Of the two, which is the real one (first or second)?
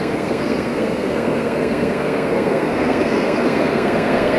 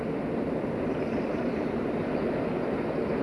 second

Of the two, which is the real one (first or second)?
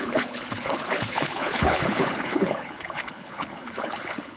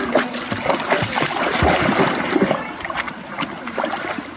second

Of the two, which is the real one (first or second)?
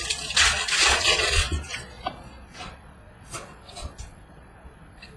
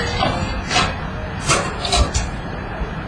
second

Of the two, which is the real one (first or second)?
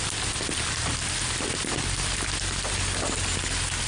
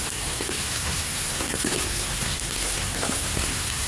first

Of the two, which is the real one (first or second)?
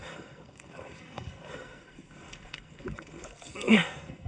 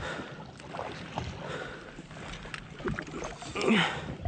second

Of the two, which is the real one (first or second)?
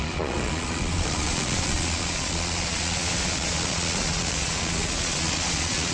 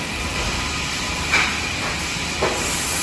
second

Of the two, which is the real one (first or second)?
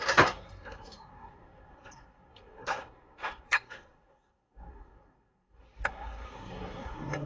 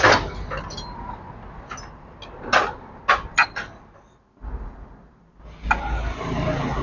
second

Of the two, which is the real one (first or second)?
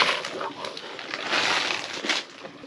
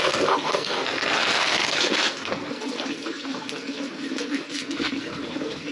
first